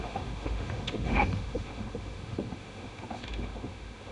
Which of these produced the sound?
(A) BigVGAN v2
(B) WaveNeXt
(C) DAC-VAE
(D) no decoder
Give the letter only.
C